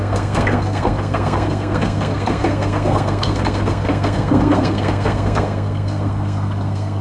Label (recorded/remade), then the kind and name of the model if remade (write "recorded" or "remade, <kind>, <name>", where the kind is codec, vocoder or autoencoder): remade, codec, SNAC